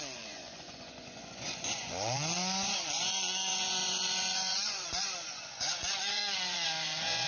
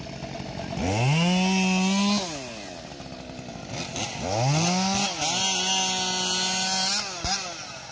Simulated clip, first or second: first